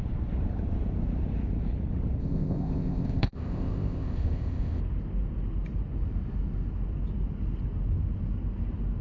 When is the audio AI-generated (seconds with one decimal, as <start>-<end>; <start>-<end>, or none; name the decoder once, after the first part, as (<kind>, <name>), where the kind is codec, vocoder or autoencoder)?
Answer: 2.2-4.8 (codec, ZipCodec)